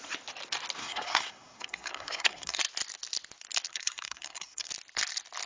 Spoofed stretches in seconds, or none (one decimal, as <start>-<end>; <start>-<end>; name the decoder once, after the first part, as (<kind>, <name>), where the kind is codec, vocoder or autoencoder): 0.8-2.6 (codec, SNAC); 3.7-4.7